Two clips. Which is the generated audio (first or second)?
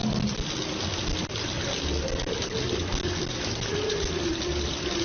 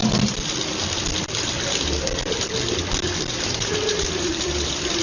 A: second